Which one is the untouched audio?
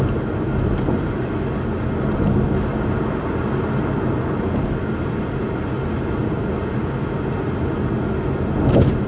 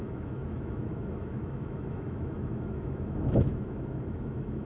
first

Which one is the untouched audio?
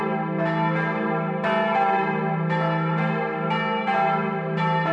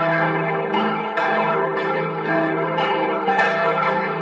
first